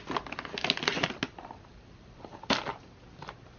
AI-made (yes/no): no